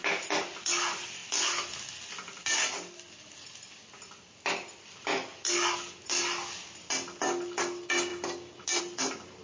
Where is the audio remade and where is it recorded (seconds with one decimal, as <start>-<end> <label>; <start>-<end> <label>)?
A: 0.0-9.4 recorded